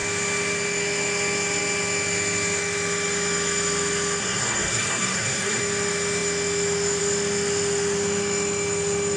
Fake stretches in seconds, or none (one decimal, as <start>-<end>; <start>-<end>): 4.2-5.6